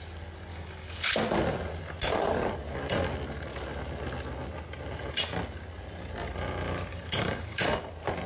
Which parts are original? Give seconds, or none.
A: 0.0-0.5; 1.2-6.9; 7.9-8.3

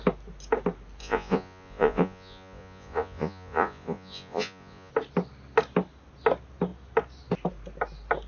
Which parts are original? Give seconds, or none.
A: 0.0-1.0; 4.9-8.3

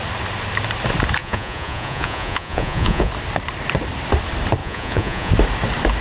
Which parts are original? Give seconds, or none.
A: 0.0-1.2; 3.1-4.6; 5.3-6.0